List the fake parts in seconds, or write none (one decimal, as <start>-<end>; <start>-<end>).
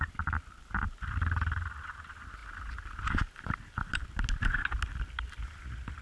none